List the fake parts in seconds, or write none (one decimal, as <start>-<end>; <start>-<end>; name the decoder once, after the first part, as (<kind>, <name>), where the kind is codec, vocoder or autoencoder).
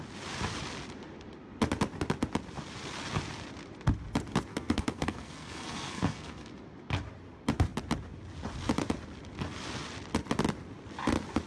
4.5-6.5 (codec, SNAC)